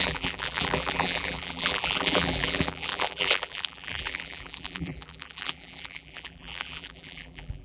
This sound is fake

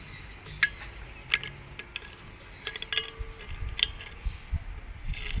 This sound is real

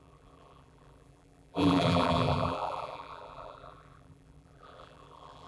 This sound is fake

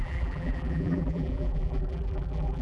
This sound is fake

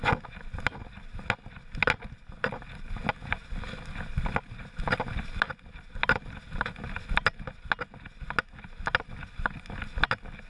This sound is real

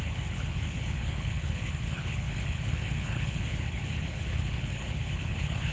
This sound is fake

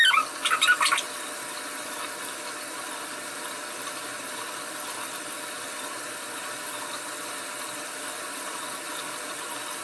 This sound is real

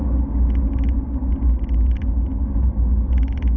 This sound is real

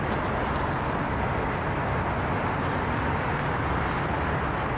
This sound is real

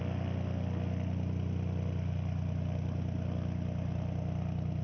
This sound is real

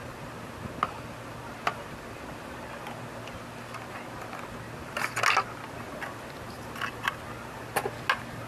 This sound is real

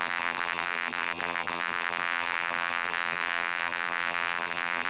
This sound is fake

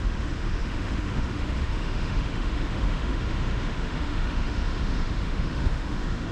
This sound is fake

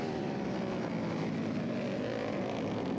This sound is real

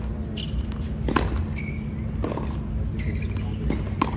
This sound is real